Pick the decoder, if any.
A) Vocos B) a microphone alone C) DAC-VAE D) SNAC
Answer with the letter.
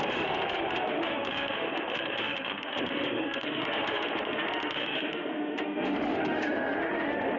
C